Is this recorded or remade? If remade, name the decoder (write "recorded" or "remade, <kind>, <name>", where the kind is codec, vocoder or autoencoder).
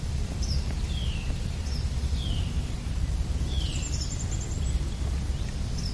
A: recorded